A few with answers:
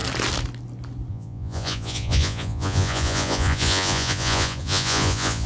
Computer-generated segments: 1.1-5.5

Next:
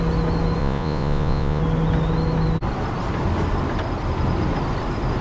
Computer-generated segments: 0.6-1.6

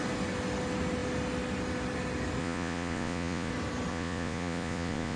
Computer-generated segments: 2.4-3.5; 3.9-5.2

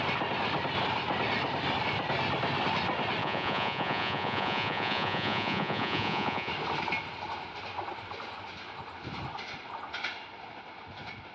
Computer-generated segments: 3.2-6.5

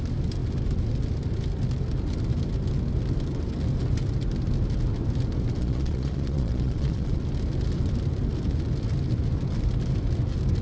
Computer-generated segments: 5.6-7.2